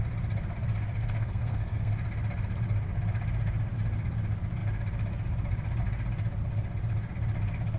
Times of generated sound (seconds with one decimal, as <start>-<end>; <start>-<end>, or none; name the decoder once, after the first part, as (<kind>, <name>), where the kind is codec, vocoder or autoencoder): 1.0-1.9 (codec, SNAC)